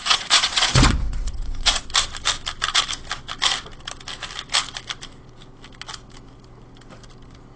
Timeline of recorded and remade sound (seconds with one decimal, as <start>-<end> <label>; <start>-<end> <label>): 0.0-1.9 remade; 1.9-7.6 recorded